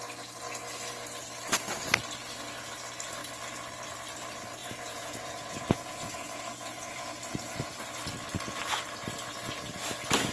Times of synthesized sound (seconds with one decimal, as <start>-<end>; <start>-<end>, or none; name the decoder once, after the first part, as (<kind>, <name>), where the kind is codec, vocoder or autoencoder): 4.6-7.7 (vocoder, Vocos)